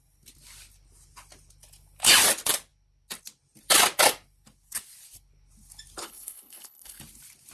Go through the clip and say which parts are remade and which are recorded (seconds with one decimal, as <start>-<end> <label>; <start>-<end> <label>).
0.0-6.0 recorded; 6.0-7.0 remade; 7.0-7.5 recorded